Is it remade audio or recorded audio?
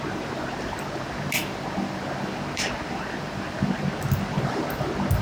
recorded